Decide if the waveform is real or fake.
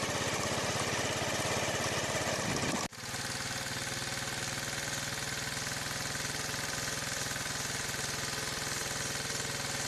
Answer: real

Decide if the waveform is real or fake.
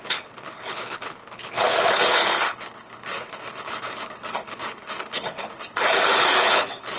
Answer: fake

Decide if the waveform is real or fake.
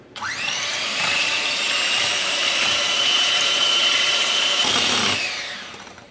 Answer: fake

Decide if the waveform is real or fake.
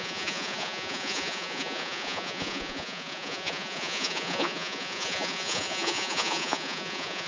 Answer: fake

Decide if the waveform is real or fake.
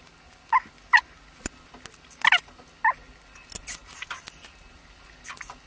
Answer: real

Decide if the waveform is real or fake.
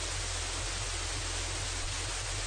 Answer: real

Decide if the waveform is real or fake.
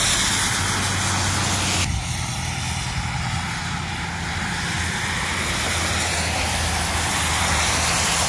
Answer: real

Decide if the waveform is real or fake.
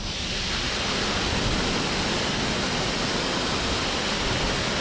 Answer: real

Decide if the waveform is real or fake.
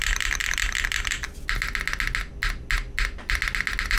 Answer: real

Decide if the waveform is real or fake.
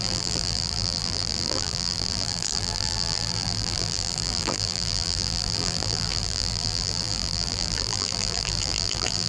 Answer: fake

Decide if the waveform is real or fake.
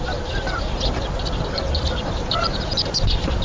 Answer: real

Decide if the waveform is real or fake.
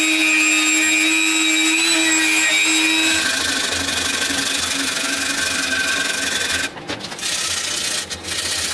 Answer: real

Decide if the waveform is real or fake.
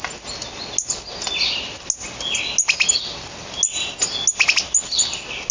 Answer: real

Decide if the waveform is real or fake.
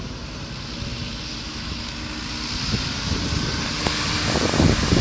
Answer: real